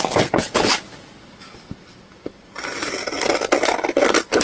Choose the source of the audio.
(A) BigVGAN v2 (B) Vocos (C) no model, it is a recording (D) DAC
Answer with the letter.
C